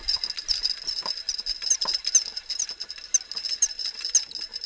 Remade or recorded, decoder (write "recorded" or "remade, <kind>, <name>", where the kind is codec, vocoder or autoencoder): recorded